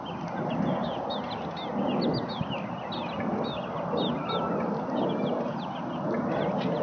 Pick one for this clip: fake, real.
real